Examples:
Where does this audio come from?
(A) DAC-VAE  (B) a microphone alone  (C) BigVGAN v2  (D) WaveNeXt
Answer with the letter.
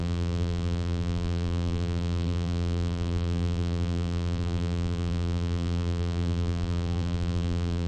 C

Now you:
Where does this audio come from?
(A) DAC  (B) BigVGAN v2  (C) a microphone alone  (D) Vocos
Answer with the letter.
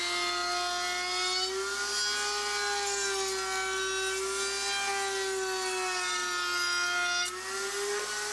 C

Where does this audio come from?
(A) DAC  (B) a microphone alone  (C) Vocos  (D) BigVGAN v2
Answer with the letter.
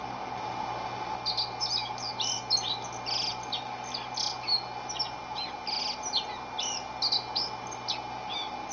B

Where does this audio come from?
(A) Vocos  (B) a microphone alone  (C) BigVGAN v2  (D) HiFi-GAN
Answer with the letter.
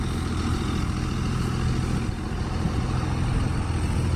B